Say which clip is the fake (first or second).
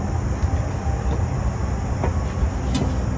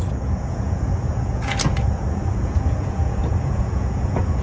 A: second